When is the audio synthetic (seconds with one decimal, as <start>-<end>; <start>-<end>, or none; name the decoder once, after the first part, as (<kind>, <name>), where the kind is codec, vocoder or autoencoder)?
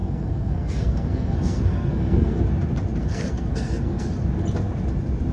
0.0-2.4 (codec, SNAC); 3.0-4.1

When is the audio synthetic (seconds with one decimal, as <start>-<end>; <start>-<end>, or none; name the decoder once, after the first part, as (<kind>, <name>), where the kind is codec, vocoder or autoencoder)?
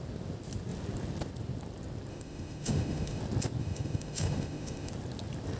2.1-3.2 (autoencoder, DAC-VAE); 3.6-4.9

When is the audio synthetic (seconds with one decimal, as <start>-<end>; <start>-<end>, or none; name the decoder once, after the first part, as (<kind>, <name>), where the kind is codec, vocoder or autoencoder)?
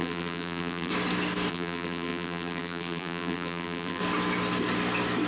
0.0-0.9 (vocoder, BigVGAN v2); 1.5-4.0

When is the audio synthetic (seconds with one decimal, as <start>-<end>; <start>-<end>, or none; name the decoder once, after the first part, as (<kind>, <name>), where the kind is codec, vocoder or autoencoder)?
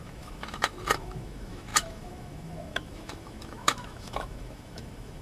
0.0-5.2 (autoencoder, DAC-VAE)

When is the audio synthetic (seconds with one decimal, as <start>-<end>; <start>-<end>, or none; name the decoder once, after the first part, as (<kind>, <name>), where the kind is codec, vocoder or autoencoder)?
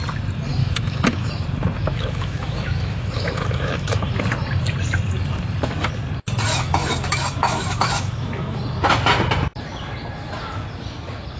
0.6-1.3 (autoencoder, DAC-VAE); 1.8-4.1; 6.5-8.6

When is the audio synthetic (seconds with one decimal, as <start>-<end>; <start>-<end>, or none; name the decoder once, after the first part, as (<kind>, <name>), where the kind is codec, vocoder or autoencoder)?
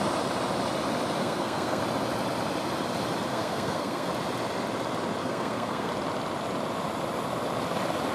1.2-1.8 (codec, SNAC); 3.3-4.1; 5.2-5.9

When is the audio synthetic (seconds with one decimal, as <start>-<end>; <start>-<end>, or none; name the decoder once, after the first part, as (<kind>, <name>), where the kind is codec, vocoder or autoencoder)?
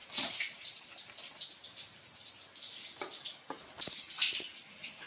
0.0-0.9 (vocoder, BigVGAN v2)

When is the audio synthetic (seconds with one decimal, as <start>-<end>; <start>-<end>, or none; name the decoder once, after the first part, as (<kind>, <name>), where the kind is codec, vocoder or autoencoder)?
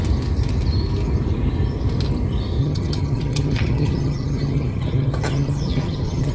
2.6-6.3 (vocoder, HiFi-GAN)